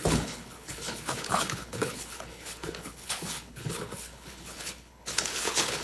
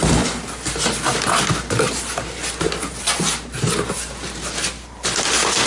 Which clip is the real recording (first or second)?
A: second